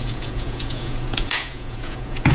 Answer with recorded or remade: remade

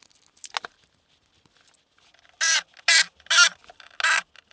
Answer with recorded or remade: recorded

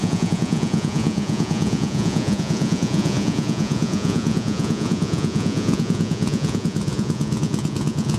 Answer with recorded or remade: remade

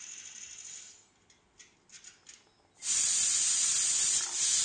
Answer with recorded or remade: recorded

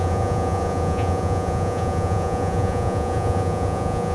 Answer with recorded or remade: remade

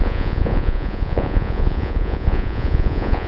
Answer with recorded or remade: remade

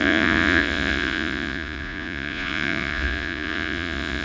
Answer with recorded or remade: remade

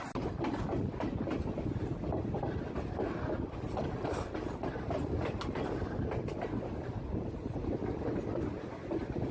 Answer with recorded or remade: recorded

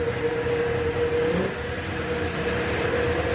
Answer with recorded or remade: recorded